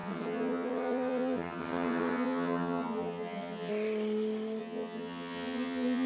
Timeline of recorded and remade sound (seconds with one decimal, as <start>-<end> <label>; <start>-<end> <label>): 0.0-3.7 remade; 3.7-4.6 recorded; 4.6-6.1 remade